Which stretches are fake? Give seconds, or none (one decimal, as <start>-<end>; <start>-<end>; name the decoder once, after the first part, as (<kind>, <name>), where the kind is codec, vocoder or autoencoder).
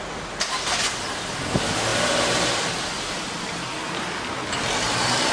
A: none